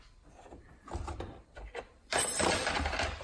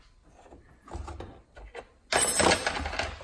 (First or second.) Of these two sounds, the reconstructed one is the first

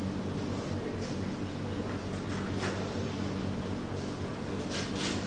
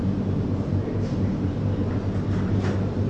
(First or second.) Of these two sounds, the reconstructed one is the second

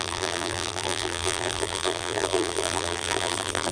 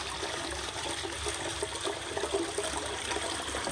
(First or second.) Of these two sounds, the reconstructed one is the first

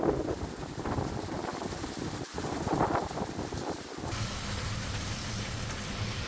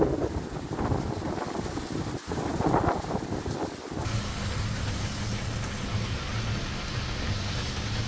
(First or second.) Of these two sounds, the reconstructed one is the first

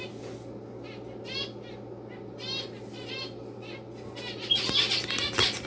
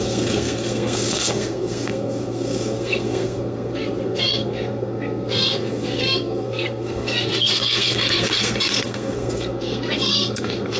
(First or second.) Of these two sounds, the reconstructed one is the second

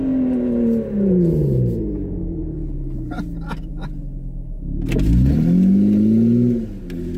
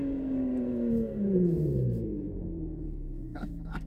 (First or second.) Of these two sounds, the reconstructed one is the second